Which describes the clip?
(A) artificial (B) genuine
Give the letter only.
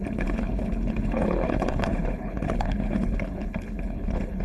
A